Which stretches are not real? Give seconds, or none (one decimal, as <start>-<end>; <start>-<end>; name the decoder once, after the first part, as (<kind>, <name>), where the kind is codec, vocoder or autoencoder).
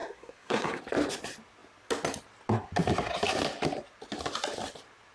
0.0-0.8 (codec, SNAC)